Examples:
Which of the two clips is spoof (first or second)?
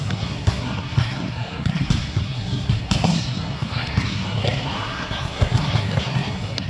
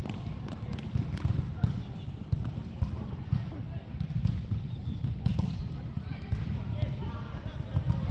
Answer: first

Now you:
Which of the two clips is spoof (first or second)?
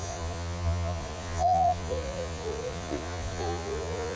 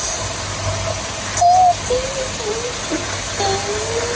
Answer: first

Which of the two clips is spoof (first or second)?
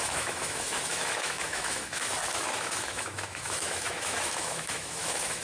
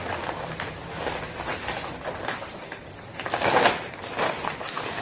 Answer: first